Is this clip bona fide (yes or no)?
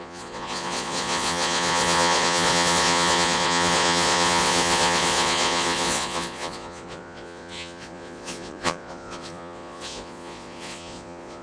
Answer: no